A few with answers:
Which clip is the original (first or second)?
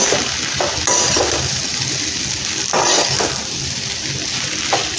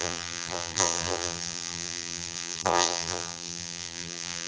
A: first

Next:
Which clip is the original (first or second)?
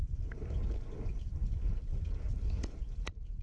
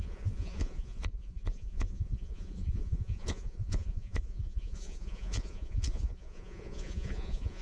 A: first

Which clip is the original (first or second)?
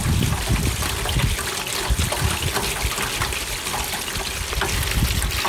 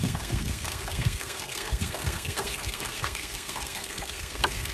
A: first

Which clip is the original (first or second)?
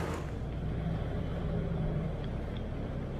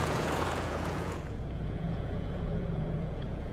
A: first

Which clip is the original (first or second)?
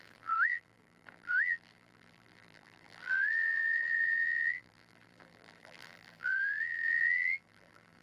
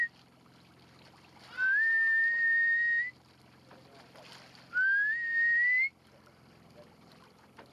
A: second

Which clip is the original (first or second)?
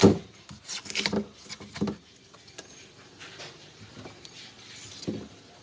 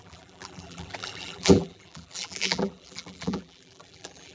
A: first